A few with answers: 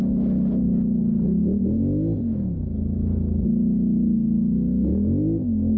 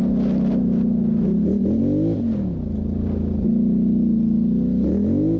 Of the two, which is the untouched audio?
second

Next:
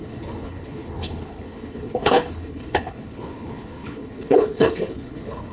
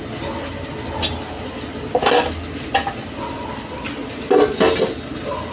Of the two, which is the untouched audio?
second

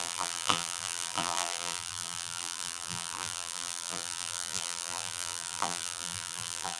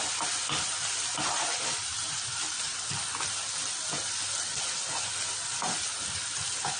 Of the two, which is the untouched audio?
second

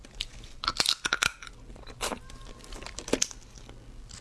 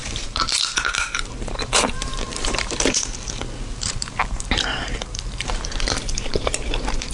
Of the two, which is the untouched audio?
first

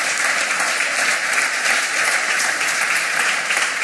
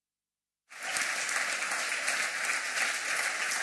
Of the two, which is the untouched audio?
second